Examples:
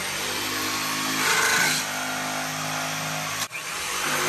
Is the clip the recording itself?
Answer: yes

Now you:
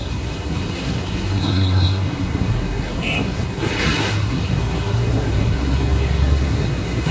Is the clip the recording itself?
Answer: no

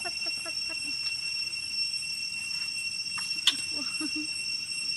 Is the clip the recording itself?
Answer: yes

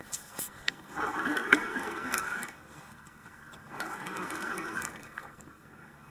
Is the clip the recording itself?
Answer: no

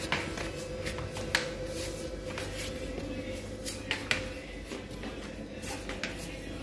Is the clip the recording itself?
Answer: yes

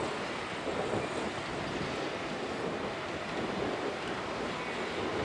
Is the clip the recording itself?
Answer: yes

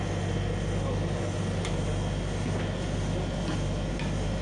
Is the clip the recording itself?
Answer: yes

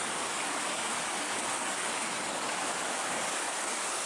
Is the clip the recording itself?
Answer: no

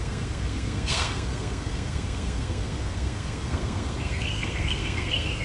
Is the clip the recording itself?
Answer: no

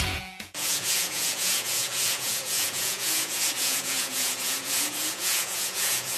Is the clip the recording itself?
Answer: no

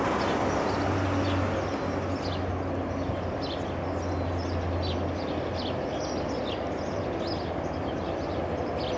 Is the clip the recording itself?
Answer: yes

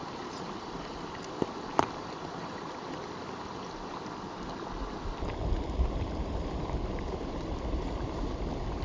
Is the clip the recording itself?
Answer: yes